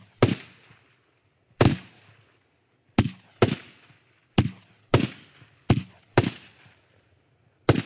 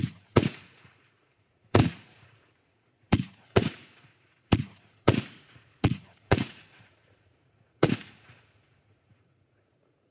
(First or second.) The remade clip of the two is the second